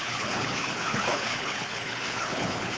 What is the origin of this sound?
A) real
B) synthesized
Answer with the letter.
B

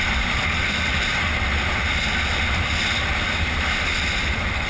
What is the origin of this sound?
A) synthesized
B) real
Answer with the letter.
B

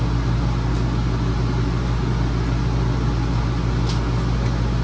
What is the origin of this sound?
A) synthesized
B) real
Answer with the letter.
B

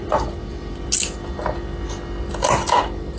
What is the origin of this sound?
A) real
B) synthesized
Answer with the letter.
A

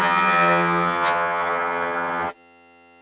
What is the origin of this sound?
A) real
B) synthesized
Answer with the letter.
B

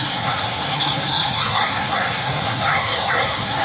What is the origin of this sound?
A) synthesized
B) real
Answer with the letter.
A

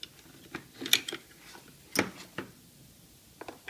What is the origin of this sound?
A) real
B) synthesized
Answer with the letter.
A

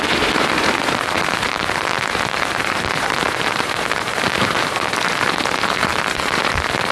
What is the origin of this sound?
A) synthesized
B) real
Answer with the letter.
A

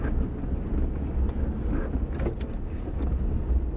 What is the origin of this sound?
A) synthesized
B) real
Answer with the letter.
B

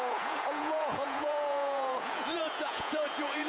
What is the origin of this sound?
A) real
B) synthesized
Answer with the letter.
B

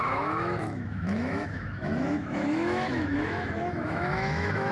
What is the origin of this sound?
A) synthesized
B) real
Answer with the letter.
A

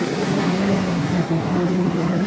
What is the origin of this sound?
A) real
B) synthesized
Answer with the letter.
B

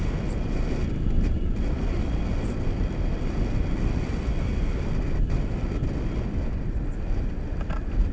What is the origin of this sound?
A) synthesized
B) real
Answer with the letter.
B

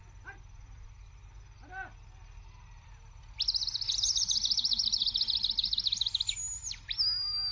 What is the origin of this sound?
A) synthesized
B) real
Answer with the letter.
B